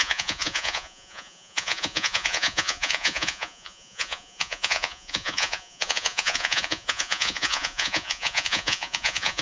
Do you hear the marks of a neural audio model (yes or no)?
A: yes